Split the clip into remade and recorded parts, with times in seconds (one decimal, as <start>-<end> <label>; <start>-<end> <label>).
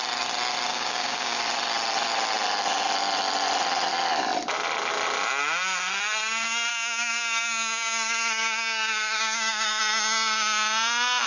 0.0-0.7 recorded; 0.7-1.4 remade; 1.4-6.7 recorded; 6.7-9.8 remade; 9.8-11.3 recorded